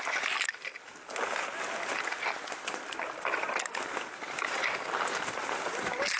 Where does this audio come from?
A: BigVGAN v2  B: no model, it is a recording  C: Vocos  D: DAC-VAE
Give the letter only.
B